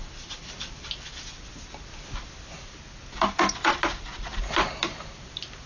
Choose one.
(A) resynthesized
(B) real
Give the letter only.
B